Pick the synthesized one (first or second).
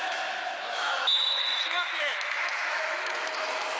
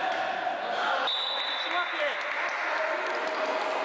first